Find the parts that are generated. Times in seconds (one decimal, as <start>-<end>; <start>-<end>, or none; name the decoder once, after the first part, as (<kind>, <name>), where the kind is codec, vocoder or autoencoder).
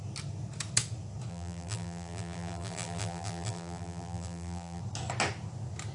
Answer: 1.3-4.8 (vocoder, BigVGAN v2)